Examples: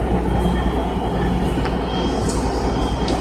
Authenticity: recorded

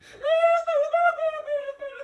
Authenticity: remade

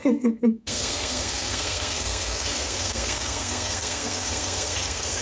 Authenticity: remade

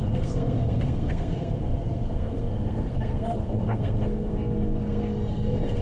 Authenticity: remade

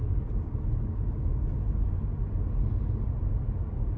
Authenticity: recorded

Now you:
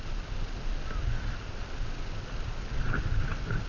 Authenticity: recorded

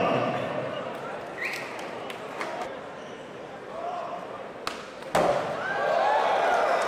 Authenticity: recorded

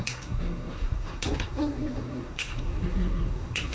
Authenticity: remade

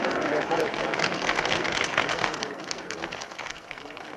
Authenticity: remade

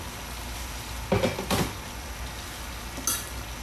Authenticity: recorded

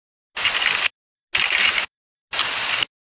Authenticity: recorded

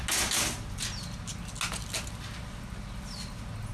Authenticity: recorded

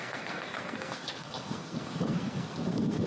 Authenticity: remade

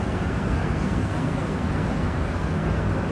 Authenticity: remade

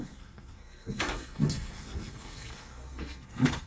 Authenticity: remade